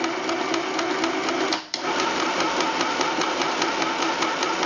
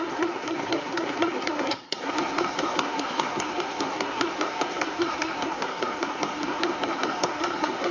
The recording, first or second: first